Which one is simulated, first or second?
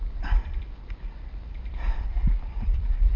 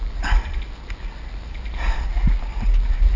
first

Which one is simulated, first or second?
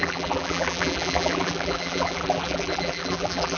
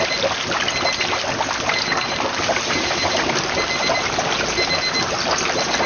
first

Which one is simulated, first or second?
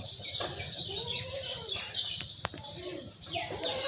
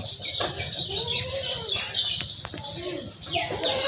first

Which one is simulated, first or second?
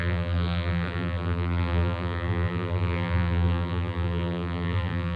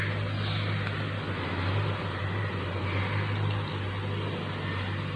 first